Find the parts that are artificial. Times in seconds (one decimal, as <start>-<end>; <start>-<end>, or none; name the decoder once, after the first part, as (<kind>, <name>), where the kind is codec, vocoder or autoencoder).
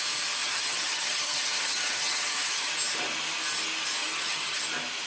0.4-2.7 (vocoder, HiFi-GAN); 4.0-4.6